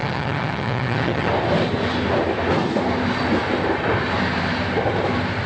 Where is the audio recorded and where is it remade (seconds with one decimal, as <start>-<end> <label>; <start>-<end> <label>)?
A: 0.0-1.3 remade; 1.3-5.5 recorded